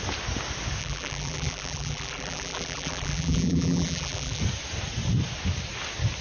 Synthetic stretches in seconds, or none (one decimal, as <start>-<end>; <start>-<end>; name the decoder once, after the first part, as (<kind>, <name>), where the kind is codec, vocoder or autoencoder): 0.8-4.4 (vocoder, BigVGAN v2)